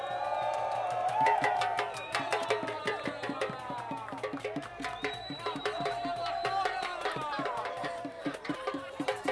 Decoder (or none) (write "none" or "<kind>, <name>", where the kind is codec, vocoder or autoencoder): vocoder, BigVGAN v2